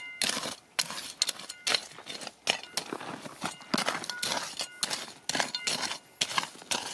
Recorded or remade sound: recorded